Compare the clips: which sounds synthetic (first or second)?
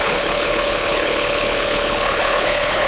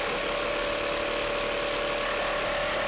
first